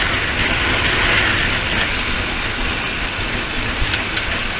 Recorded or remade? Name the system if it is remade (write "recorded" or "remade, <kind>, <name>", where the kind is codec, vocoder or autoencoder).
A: recorded